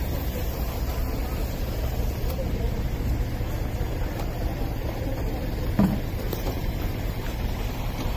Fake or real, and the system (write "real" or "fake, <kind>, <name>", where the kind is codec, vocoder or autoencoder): fake, vocoder, BigVGAN v2